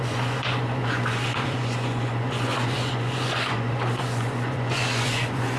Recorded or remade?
remade